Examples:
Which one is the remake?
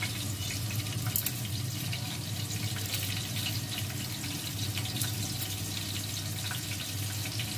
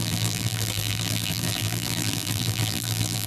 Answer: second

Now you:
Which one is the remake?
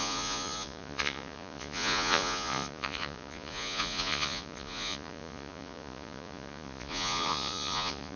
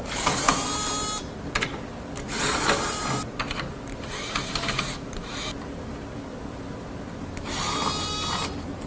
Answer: first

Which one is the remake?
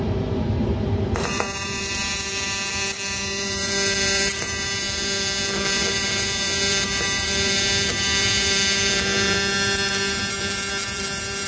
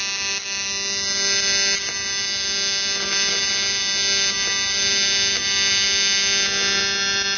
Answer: first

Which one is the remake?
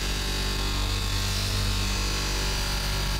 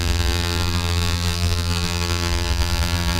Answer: second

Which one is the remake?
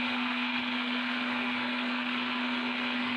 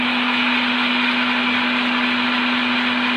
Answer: first